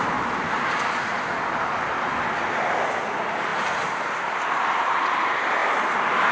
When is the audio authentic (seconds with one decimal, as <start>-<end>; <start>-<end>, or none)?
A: 0.0-6.3